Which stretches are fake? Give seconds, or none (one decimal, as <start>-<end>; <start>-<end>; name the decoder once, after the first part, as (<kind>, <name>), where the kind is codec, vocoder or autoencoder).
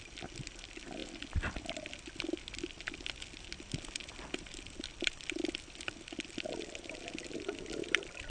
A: none